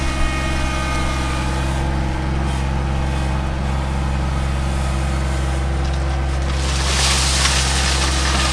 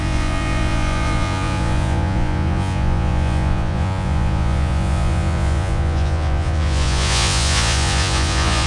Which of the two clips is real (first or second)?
first